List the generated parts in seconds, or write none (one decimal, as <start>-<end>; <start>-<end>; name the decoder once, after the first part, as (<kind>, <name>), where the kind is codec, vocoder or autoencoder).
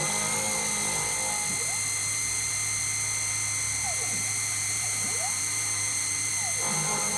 2.0-2.5 (vocoder, BigVGAN v2); 4.1-6.3